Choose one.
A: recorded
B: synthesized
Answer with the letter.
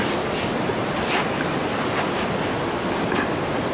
A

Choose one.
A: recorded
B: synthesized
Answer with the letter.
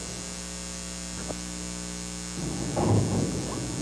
A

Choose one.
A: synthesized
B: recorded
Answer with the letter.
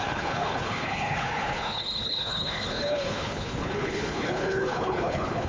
A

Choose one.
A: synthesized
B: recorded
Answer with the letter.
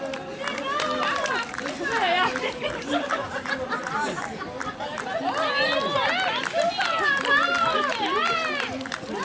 B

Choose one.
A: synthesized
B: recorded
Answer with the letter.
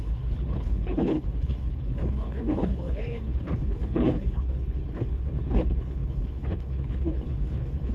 A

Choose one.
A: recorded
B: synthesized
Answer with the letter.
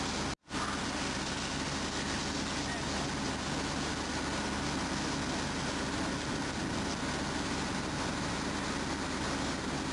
A